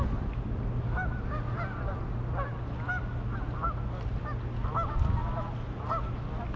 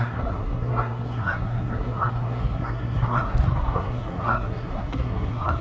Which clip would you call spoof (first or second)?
second